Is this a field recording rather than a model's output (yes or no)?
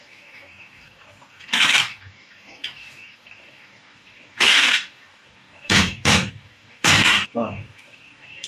no